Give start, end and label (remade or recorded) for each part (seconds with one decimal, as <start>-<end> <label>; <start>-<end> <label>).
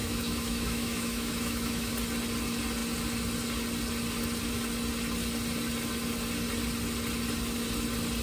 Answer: 0.0-1.9 remade; 1.9-8.2 recorded